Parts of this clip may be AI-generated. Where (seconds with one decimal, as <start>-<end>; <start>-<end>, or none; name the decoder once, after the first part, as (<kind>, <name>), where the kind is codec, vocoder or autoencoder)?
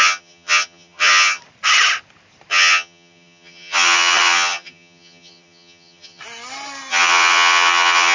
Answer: 0.0-1.4 (vocoder, HiFi-GAN); 2.5-6.2; 6.9-8.1